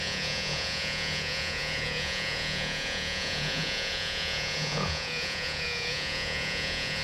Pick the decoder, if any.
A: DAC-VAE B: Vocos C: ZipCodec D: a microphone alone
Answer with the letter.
B